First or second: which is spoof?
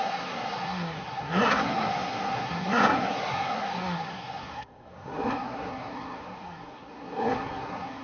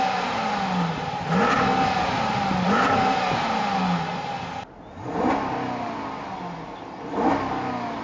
first